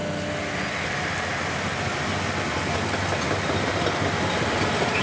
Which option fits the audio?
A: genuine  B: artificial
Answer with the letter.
A